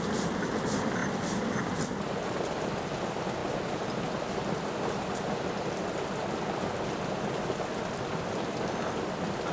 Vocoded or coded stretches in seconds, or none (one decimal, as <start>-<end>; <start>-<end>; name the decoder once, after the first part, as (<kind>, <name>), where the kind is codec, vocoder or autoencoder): none